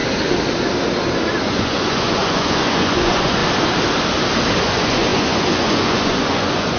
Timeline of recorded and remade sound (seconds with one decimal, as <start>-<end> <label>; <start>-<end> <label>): 0.0-1.4 recorded; 1.4-3.4 remade; 3.4-4.6 recorded; 4.6-6.8 remade